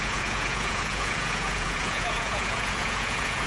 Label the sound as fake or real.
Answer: fake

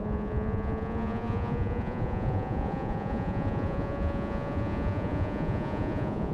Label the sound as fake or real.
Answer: fake